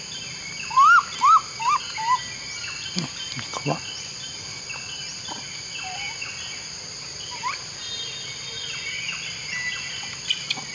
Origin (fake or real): real